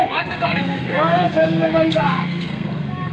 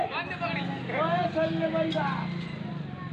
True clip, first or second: second